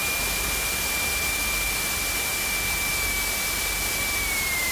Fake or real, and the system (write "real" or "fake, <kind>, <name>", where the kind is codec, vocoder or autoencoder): real